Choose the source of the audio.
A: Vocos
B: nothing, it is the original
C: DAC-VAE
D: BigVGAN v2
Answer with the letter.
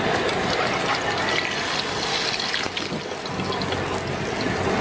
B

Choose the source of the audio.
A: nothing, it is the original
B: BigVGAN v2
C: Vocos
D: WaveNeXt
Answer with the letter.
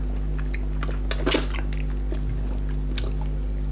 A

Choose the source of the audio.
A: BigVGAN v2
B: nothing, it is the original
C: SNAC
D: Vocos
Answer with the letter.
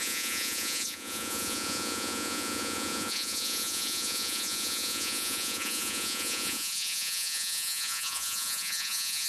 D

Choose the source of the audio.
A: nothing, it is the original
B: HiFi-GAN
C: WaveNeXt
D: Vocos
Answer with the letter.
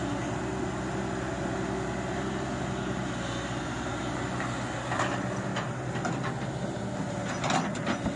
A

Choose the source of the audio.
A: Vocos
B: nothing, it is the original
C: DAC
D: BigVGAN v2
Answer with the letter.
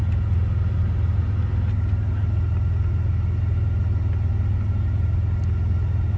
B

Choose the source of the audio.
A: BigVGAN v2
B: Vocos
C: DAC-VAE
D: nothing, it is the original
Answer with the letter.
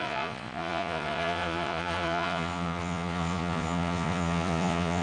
B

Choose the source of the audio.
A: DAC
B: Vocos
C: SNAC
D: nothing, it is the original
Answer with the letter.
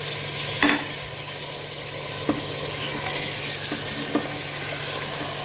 D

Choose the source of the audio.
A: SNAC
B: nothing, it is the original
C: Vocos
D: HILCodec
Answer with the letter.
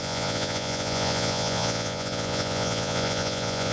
C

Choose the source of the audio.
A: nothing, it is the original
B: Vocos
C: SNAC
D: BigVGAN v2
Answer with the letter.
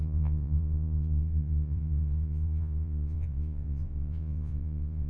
B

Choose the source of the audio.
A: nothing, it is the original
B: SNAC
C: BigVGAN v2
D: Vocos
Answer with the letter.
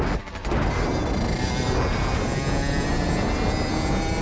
A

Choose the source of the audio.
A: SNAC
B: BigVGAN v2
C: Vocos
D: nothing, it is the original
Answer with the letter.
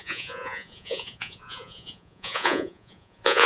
C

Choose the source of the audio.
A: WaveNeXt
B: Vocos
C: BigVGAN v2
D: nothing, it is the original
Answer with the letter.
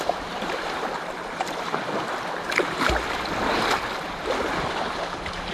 D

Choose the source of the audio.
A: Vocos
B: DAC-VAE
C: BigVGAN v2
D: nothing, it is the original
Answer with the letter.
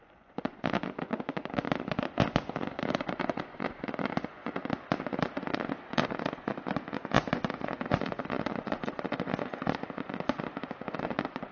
A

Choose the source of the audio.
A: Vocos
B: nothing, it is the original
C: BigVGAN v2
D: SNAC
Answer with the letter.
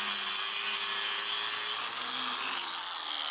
B